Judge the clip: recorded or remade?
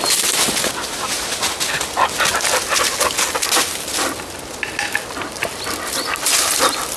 recorded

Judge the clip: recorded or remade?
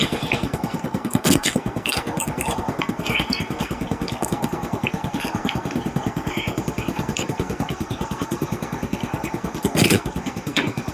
remade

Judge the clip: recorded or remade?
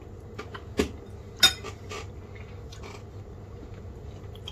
recorded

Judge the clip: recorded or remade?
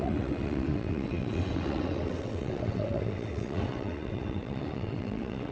remade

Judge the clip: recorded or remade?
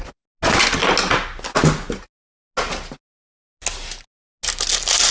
recorded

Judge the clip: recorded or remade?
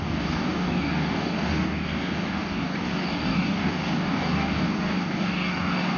remade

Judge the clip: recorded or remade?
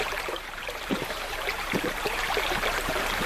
remade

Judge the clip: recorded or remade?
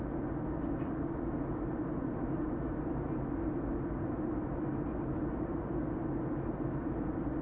recorded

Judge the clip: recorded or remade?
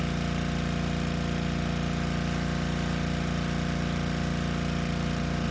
recorded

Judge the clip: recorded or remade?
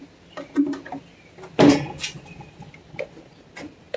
recorded